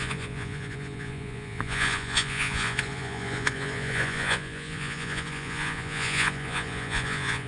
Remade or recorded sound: remade